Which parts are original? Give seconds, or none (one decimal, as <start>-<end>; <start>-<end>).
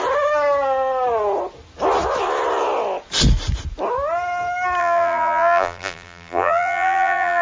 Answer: 0.0-4.8